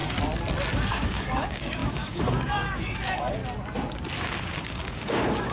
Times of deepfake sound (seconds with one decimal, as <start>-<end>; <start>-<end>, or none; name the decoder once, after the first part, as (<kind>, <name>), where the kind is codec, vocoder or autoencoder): 0.7-3.4 (codec, DAC); 4.2-5.5